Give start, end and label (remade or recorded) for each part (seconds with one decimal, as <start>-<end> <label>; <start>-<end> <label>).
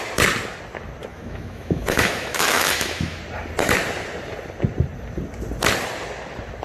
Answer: 0.0-1.1 recorded; 1.1-3.2 remade; 3.2-6.6 recorded